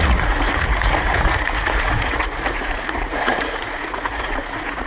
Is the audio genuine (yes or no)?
no